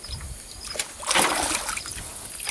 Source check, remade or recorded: recorded